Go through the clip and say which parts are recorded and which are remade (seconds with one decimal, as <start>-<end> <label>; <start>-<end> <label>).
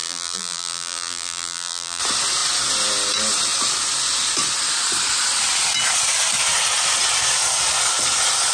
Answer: 0.0-2.0 remade; 2.0-8.5 recorded